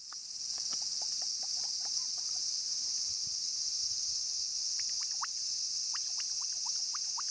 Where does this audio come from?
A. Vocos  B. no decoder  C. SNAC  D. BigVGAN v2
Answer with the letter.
B